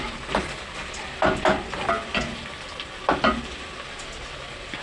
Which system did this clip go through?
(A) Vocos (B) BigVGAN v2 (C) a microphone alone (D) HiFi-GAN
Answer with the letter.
C